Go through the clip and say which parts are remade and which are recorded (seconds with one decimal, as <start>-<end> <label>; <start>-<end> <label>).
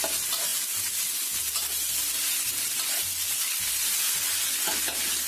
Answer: 0.0-5.3 recorded